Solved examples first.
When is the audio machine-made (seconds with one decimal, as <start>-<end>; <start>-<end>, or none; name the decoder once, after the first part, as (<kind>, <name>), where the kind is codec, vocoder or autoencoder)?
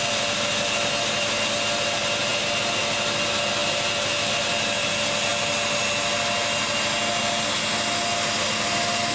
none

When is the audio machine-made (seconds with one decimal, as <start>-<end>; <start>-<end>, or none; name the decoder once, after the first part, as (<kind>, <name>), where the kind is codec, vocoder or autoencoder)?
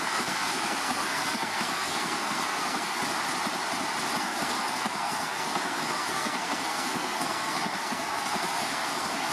0.0-3.0 (codec, SNAC); 4.2-9.3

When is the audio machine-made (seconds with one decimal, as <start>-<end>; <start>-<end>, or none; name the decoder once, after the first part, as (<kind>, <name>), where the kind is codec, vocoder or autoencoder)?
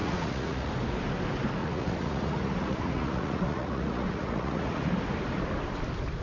0.0-0.7 (vocoder, Vocos); 1.6-4.9